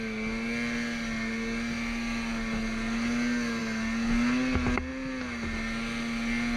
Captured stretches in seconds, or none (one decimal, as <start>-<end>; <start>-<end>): 0.0-6.6